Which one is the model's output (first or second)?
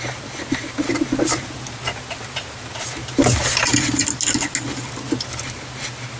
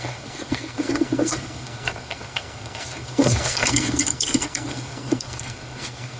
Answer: second